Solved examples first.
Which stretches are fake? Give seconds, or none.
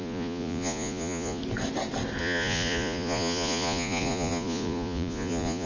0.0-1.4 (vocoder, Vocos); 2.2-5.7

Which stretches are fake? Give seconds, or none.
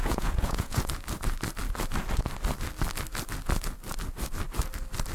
0.0-0.8 (vocoder, Vocos)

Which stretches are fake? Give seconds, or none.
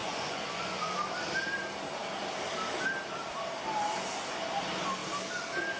0.0-0.9 (vocoder, Vocos)